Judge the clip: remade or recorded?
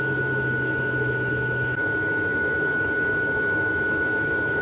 remade